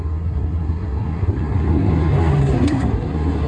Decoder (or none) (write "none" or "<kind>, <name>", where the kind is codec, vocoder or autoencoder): codec, SNAC